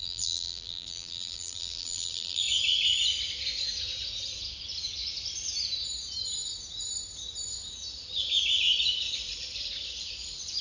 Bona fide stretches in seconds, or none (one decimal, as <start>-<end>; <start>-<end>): 2.4-10.6